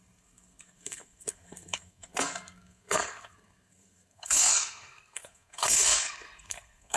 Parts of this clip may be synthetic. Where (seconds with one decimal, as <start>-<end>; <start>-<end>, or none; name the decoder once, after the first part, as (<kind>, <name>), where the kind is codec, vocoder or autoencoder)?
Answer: 0.0-7.0 (codec, SNAC)